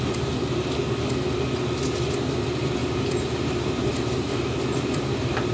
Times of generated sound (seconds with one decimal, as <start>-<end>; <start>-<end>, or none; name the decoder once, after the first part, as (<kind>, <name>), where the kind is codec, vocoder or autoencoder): 2.8-3.9 (vocoder, BigVGAN v2); 4.3-5.5